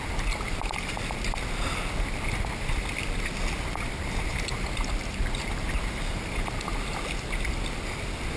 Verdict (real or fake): real